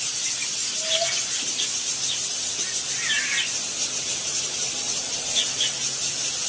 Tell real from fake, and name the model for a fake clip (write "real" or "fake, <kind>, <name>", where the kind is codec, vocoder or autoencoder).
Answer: real